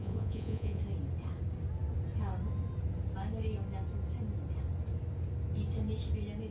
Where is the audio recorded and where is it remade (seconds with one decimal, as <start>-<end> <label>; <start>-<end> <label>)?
0.0-0.8 remade; 0.8-6.5 recorded